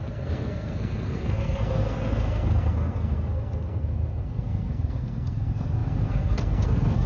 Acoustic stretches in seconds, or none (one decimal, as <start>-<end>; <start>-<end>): none